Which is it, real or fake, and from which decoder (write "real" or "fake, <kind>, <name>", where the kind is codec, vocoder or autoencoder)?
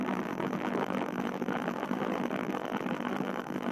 fake, vocoder, BigVGAN v2